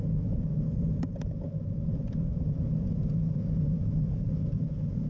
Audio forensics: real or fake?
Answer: fake